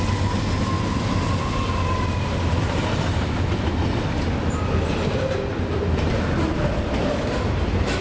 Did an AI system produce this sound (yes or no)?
no